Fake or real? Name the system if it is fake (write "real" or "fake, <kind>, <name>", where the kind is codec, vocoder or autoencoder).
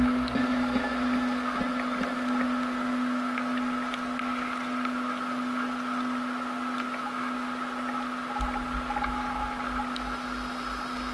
real